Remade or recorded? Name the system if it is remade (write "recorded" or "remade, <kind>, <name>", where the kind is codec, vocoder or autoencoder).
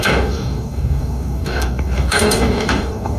remade, codec, DAC